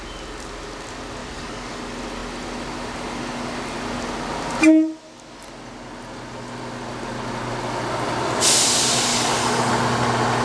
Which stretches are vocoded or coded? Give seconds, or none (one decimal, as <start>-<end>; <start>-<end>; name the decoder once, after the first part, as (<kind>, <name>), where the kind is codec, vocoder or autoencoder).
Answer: 1.2-1.8 (codec, DAC); 9.1-9.7